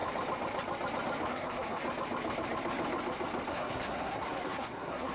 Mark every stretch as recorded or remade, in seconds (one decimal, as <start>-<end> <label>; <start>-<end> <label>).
0.0-1.3 recorded; 1.3-1.8 remade; 1.8-3.5 recorded; 3.5-5.1 remade